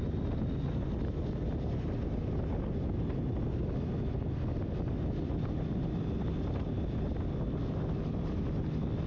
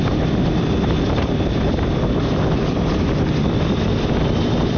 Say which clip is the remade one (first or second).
second